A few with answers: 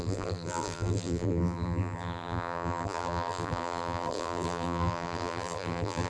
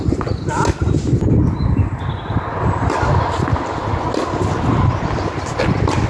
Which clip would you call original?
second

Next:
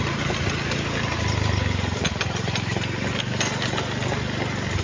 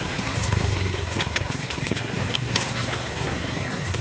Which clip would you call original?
first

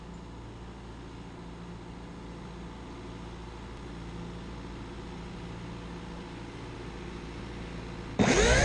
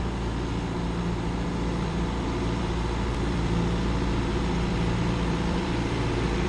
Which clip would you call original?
first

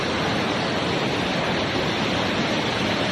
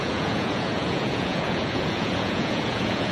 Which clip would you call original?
first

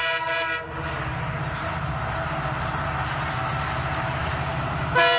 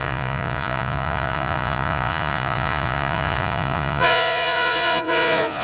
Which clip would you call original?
first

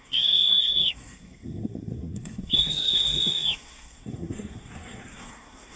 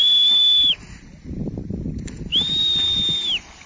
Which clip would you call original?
second